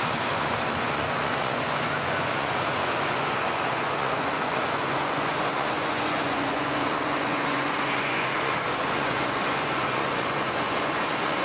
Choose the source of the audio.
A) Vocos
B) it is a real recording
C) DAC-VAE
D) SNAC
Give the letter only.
A